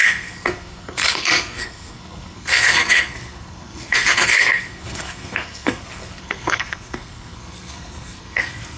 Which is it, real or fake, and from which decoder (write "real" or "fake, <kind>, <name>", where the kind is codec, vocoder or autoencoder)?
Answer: fake, codec, SNAC